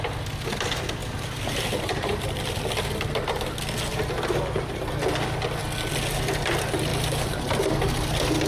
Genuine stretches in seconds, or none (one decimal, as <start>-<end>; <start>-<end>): 0.0-1.0; 2.5-3.9; 4.8-6.9; 7.7-8.5